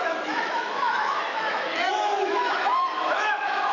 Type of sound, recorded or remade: remade